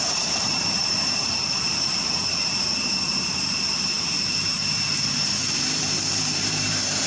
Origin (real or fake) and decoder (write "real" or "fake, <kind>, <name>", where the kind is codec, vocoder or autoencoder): fake, vocoder, BigVGAN v2